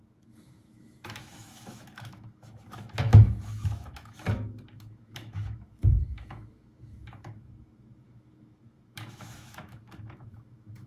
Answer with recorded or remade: remade